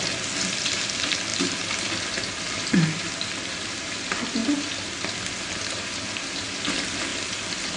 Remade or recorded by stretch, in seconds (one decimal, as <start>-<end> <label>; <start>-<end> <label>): 0.0-7.8 recorded